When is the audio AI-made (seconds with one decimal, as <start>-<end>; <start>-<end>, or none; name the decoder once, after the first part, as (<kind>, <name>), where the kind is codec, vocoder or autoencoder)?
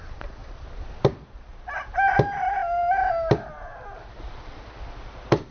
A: 0.4-1.5 (vocoder, BigVGAN v2)